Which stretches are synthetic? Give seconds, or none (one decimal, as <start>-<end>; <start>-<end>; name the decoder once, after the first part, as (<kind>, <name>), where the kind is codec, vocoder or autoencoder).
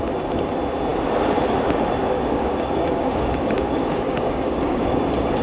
2.0-5.0 (codec, DAC)